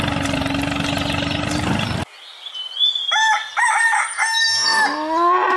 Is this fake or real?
real